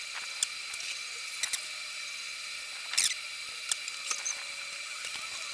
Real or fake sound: real